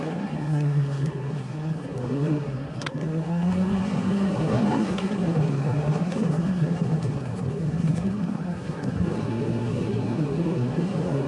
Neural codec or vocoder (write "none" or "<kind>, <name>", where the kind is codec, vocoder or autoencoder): codec, SNAC